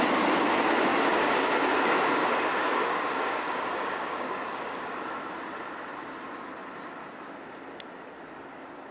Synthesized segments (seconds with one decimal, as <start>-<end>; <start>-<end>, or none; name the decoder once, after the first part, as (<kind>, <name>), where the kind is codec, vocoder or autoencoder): 0.9-4.8 (codec, DAC)